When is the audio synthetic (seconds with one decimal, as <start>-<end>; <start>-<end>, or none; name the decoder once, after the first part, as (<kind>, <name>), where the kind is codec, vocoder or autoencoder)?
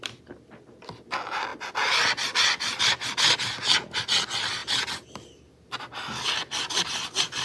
none